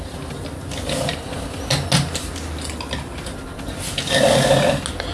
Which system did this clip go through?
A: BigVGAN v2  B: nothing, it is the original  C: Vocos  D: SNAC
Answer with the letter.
B